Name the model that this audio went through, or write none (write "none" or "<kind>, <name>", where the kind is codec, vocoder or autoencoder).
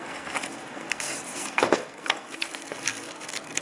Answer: codec, SNAC